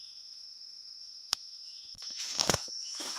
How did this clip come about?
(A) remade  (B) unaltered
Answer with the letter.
A